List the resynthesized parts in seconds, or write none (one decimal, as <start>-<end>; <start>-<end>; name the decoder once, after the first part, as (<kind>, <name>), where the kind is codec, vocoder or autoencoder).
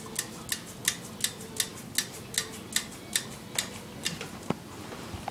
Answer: none